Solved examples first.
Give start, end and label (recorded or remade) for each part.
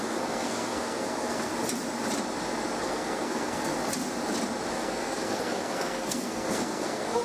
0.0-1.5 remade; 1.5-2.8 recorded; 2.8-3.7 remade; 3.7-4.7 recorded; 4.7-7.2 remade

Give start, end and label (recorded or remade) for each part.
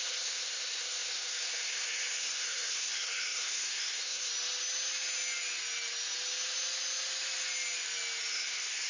0.0-4.3 remade; 4.3-8.3 recorded; 8.3-8.9 remade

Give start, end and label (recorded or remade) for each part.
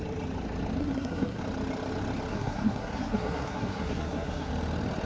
0.0-0.8 recorded; 0.8-1.4 remade; 1.4-2.3 recorded; 2.3-4.5 remade; 4.5-5.1 recorded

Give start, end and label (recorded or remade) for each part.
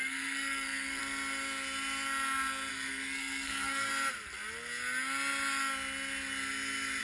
0.0-1.0 remade; 1.0-2.7 recorded; 2.7-3.9 remade; 3.9-7.0 recorded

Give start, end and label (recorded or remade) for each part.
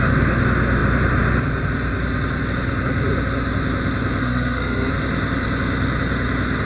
0.0-4.2 recorded; 4.2-4.9 remade; 4.9-6.6 recorded